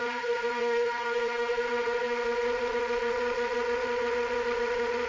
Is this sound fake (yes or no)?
yes